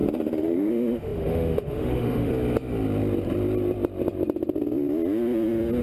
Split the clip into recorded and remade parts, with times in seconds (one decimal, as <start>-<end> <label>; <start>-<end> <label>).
0.0-2.3 remade; 2.3-5.8 recorded